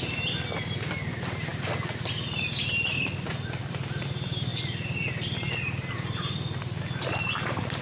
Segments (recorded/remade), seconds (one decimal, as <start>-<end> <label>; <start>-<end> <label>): 0.0-7.8 recorded